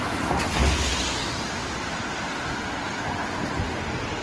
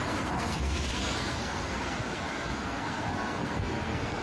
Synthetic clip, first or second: second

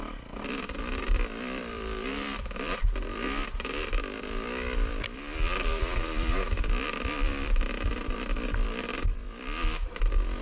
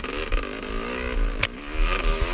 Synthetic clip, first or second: first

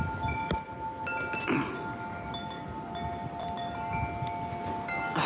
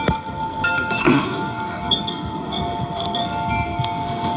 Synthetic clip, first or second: second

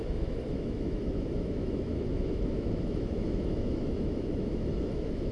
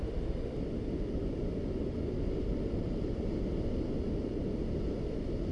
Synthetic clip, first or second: first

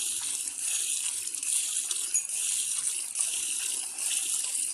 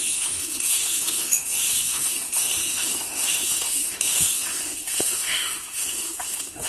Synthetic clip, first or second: second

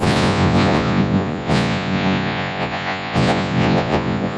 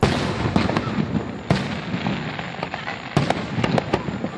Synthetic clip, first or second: first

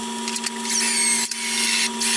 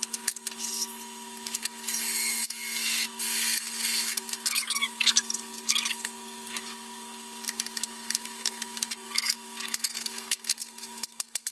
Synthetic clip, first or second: second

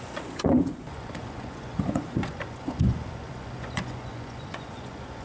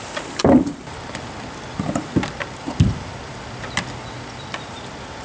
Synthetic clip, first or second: first